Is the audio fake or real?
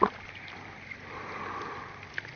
real